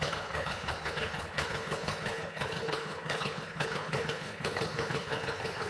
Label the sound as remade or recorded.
remade